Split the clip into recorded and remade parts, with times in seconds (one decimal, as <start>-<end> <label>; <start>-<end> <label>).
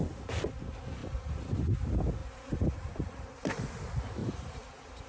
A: 0.0-1.0 recorded; 1.0-1.5 remade; 1.5-2.2 recorded; 2.2-3.6 remade; 3.6-4.2 recorded; 4.2-5.1 remade